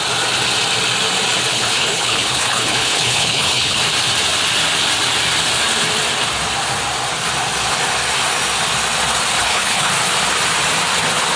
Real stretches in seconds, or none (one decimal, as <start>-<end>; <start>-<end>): 0.0-1.5; 3.8-9.4; 9.9-11.4